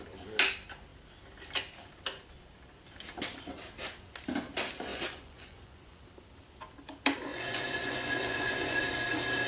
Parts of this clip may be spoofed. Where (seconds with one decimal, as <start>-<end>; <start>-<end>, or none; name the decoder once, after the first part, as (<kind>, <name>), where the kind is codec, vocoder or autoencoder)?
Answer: 4.9-6.0 (vocoder, Vocos); 7.3-8.8